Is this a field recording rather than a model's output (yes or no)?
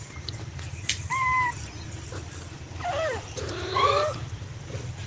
no